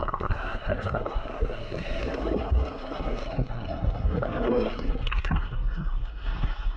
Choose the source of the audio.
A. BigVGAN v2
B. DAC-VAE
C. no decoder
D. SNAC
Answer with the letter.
D